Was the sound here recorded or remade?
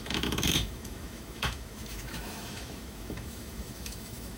remade